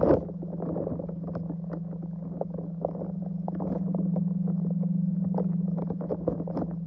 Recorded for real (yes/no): yes